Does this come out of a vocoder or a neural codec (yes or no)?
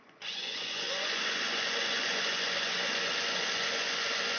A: yes